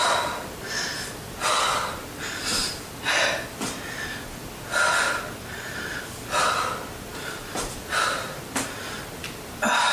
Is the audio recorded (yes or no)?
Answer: yes